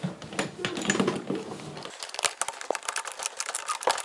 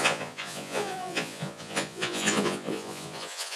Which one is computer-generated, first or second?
second